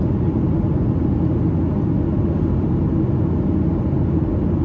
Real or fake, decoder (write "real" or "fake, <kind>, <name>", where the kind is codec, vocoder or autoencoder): real